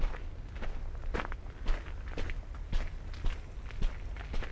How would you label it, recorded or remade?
recorded